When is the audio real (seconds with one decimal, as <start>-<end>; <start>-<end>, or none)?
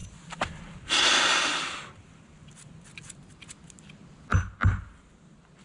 0.0-5.6